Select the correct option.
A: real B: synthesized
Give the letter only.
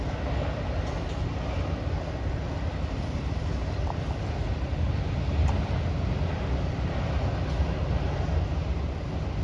A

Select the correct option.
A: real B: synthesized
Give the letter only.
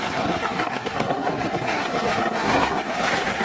B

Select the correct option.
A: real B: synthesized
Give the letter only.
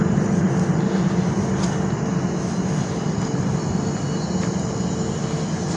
A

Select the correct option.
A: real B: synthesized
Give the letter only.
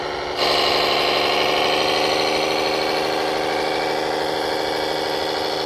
A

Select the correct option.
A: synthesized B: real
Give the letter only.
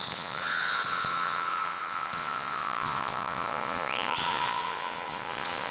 A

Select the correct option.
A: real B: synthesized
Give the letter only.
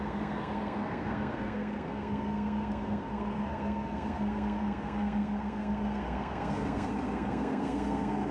B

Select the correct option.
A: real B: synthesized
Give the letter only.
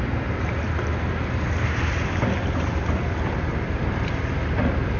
A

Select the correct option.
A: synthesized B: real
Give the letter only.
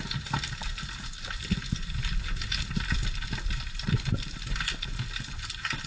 B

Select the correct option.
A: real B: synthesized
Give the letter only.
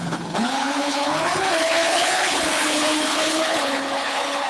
B